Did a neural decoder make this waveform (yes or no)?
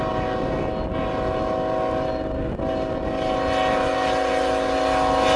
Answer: no